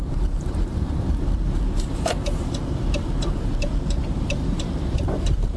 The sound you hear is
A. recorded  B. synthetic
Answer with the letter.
B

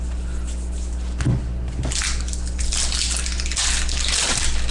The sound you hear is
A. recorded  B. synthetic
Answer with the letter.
A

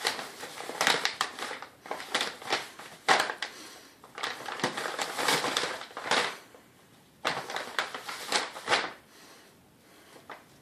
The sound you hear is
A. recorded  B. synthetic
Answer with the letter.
B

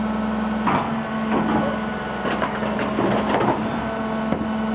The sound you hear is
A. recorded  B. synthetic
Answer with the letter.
A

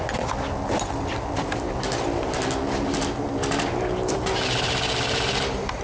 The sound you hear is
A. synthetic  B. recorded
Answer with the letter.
B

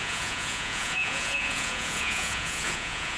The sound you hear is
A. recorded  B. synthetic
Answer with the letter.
B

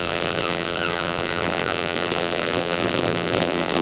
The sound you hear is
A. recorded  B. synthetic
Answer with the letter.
B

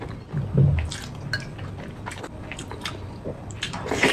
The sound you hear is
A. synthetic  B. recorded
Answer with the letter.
B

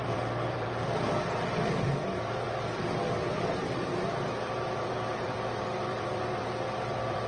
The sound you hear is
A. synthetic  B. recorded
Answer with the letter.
A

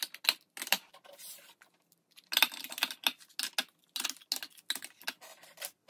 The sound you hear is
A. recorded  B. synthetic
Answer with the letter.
A